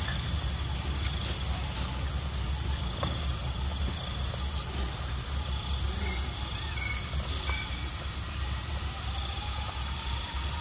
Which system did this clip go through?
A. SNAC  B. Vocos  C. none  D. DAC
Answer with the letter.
C